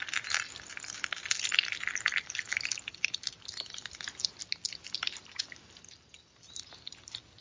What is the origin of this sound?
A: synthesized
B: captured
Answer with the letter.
B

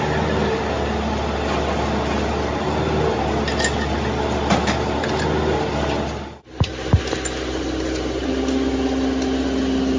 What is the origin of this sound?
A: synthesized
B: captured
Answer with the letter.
B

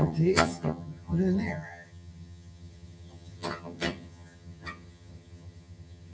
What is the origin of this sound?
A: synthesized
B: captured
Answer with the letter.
A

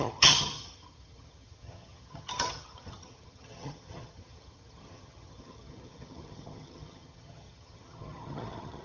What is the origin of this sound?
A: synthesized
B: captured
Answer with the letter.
A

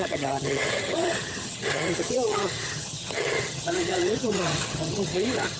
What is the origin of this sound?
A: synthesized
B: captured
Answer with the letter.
A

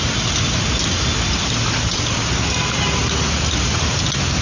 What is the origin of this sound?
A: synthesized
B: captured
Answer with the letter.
B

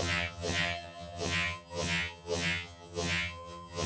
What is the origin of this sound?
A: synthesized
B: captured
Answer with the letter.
A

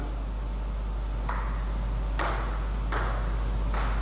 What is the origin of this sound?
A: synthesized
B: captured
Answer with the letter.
B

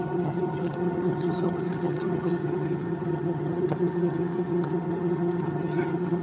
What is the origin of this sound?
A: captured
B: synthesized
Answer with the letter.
B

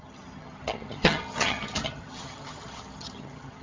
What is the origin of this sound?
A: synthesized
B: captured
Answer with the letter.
A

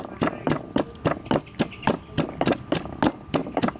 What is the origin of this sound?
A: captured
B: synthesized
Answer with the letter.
A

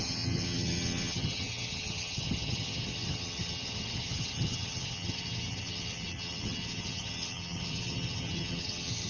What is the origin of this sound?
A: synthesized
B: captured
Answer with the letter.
A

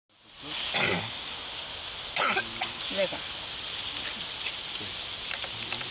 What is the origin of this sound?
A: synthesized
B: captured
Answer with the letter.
B